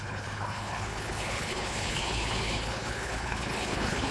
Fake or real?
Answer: fake